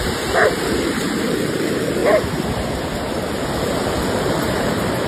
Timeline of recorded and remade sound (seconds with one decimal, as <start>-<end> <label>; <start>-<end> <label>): 0.0-2.0 remade; 2.0-3.6 recorded; 3.6-5.1 remade